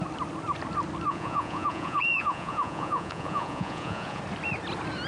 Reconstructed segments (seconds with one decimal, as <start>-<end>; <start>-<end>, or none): 1.1-4.2